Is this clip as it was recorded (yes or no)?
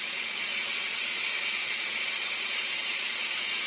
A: no